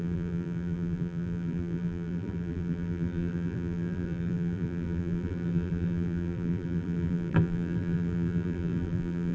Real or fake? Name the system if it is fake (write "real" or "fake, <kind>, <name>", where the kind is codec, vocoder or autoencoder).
fake, vocoder, BigVGAN v2